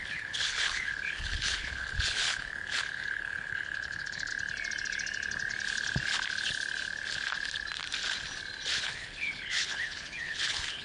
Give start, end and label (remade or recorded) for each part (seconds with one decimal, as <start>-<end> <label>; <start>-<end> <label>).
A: 0.0-4.3 remade; 4.3-8.8 recorded; 8.8-10.8 remade